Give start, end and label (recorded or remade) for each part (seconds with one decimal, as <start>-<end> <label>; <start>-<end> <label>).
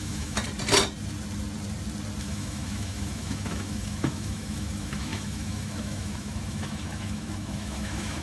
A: 0.0-0.4 remade; 0.4-2.2 recorded; 2.2-8.2 remade